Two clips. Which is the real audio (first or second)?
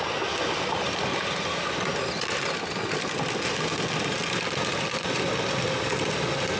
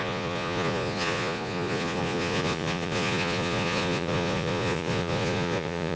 first